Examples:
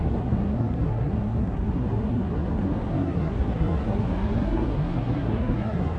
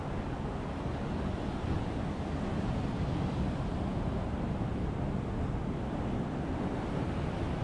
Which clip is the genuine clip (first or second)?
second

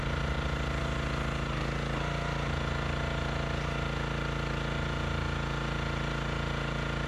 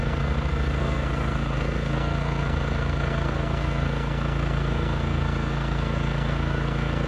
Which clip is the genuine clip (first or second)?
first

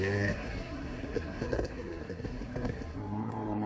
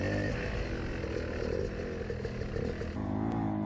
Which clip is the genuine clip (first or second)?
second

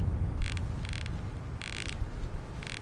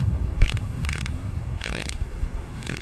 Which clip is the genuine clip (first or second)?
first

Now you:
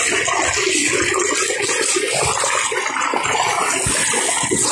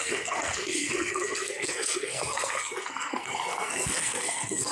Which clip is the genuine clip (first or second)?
first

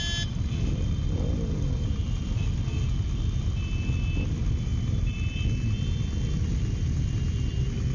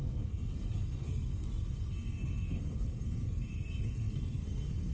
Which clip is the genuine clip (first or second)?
first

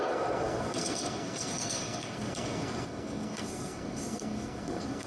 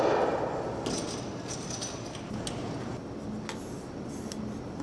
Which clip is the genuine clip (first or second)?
second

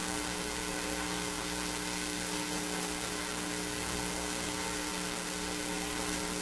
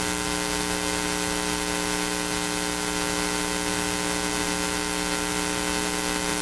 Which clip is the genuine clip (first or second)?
second